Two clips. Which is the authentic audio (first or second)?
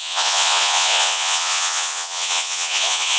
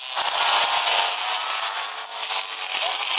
second